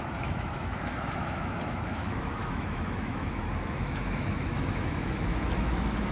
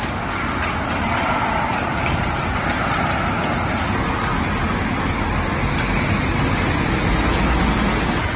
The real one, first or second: second